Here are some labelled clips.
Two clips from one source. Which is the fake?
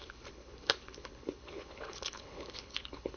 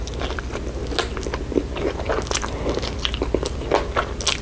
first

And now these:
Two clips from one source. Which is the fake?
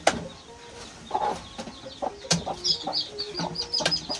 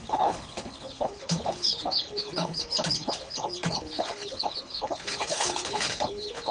second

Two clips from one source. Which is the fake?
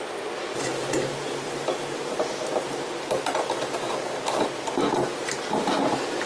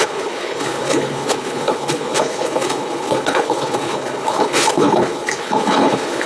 second